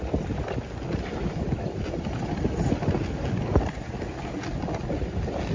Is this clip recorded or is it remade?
recorded